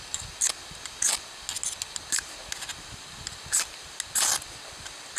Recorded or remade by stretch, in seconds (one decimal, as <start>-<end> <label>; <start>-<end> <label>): 0.0-5.2 recorded